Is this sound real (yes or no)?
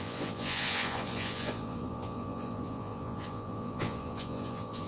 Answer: no